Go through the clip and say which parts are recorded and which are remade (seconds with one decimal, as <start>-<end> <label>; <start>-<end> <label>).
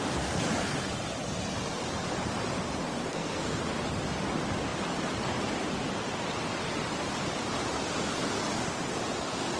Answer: 0.0-3.1 recorded; 3.1-3.6 remade; 3.6-9.6 recorded